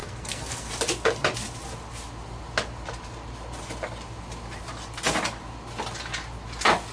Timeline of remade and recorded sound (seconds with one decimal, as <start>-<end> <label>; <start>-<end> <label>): 0.0-0.7 remade; 0.7-6.9 recorded